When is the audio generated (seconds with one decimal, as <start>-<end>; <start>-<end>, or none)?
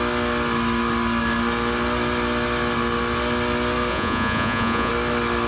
3.9-4.9